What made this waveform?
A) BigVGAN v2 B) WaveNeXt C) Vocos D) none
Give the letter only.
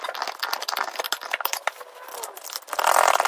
D